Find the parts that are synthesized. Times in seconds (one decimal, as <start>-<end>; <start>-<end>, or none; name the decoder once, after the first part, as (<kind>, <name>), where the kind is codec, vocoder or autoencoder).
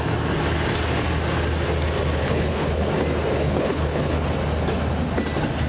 2.2-2.9 (codec, HILCodec); 3.4-4.3